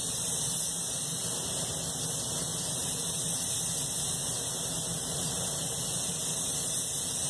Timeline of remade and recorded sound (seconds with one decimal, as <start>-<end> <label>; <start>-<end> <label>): 0.0-7.3 recorded